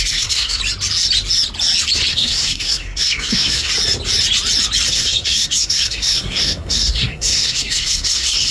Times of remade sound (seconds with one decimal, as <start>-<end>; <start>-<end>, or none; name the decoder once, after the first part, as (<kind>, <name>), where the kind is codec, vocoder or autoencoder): 0.0-0.6 (codec, SNAC); 2.1-3.7; 4.9-8.5